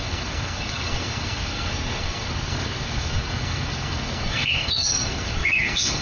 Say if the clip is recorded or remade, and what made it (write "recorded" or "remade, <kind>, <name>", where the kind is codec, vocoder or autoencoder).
remade, codec, SNAC